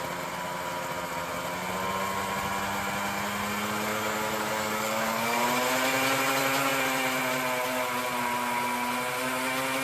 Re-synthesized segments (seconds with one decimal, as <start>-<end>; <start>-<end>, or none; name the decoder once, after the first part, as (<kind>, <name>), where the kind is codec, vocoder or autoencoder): 3.9-5.4 (codec, DAC)